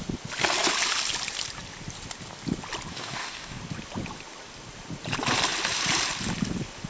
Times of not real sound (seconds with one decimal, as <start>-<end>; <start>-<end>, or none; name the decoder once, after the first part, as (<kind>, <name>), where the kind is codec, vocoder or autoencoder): 2.9-3.6 (codec, DAC)